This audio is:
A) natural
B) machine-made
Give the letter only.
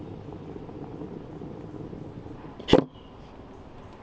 A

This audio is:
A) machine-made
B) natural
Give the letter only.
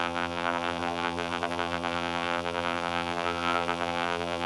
A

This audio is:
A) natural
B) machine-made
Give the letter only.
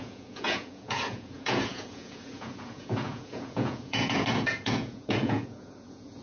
B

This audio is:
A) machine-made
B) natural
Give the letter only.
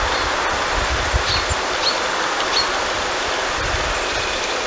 B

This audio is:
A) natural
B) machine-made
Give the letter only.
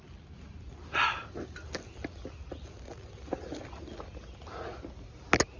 A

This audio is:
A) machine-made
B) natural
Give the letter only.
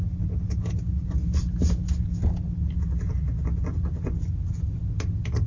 B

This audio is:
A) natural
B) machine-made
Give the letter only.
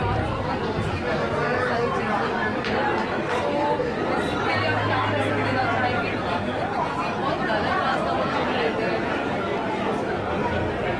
A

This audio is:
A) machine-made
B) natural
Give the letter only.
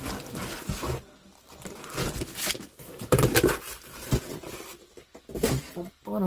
B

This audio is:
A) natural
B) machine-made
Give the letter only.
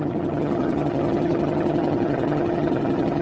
B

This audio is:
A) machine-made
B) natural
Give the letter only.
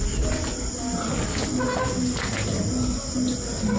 B